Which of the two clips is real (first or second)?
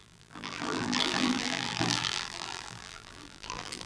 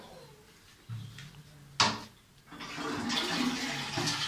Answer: second